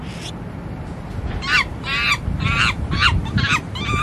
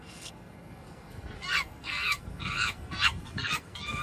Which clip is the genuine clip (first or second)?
first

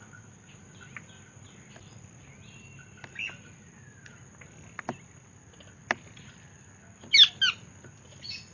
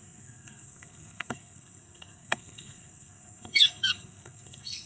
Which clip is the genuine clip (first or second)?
first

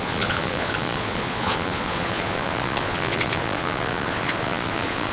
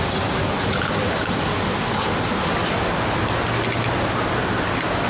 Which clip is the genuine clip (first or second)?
second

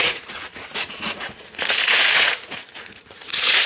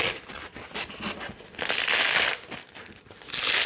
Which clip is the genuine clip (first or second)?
second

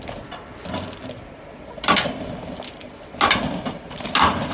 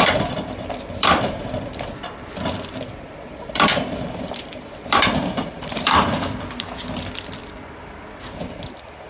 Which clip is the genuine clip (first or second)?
first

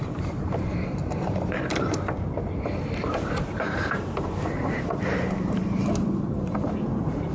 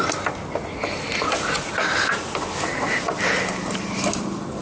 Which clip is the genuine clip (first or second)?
second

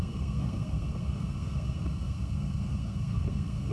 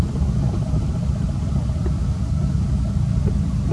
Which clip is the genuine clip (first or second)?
second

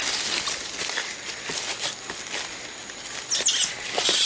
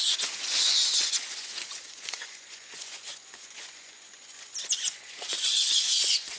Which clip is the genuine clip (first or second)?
first